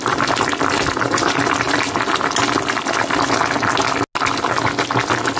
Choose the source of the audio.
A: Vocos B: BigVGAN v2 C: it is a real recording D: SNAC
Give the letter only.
C